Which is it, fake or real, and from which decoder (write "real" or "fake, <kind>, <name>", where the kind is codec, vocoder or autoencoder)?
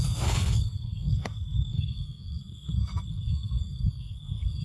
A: fake, codec, SNAC